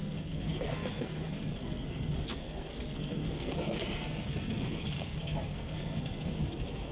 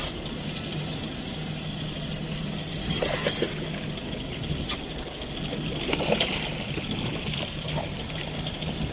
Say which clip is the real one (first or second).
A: second